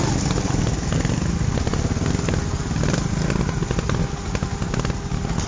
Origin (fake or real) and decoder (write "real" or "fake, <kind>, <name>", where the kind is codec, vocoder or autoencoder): real